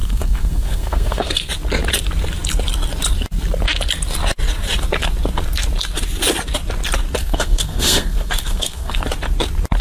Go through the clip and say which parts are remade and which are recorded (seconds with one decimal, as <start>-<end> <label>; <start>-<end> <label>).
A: 0.0-1.5 remade; 1.5-7.2 recorded; 7.2-9.0 remade; 9.0-9.8 recorded

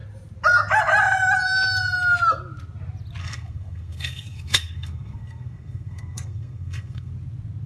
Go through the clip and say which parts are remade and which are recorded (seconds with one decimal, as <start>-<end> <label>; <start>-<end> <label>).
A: 0.0-3.2 recorded; 3.2-7.1 remade; 7.1-7.7 recorded

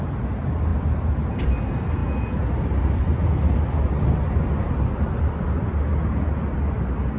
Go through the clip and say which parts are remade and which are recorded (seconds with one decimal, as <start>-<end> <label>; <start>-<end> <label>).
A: 0.0-7.2 recorded

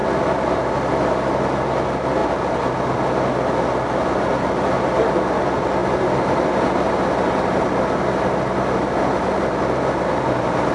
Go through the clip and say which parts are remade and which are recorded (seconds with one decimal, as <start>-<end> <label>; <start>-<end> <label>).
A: 0.0-10.7 recorded

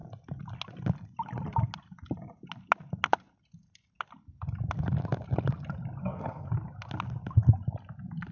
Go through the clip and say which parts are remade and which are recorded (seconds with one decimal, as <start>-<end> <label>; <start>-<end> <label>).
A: 0.0-6.0 recorded; 6.0-6.5 remade; 6.5-8.3 recorded